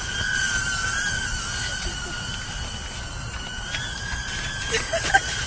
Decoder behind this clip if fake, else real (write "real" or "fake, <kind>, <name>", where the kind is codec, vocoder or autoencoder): real